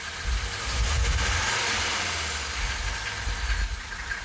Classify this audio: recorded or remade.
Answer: recorded